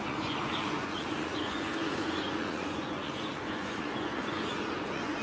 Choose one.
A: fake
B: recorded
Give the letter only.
A